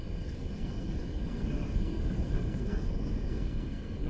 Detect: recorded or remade remade